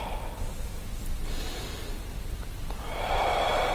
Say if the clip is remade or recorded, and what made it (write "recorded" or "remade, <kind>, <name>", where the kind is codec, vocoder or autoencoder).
recorded